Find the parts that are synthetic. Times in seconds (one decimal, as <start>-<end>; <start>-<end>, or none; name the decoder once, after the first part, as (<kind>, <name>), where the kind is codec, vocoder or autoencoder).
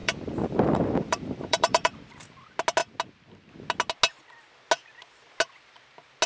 0.0-2.1 (vocoder, BigVGAN v2)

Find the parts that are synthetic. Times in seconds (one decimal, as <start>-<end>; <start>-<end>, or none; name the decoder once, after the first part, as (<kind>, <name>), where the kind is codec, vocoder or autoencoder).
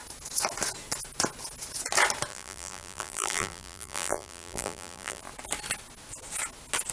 2.3-5.2 (vocoder, BigVGAN v2)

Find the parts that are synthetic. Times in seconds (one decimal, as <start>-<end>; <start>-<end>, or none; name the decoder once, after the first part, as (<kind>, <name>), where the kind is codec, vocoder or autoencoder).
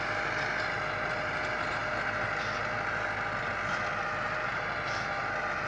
none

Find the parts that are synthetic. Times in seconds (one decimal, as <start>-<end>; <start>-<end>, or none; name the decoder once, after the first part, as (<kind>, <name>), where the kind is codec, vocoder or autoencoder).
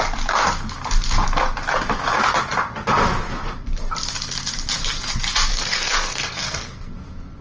5.5-6.9 (codec, SNAC)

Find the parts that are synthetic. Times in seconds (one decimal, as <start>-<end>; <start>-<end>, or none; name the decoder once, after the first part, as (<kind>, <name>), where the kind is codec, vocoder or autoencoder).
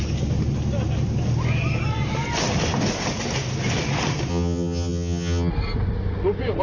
4.3-5.5 (vocoder, HiFi-GAN)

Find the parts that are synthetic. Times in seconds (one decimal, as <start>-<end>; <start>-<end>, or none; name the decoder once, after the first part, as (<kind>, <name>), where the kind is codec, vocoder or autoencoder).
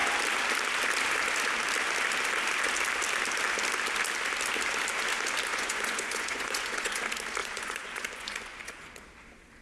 5.5-7.0 (vocoder, Vocos); 7.4-8.9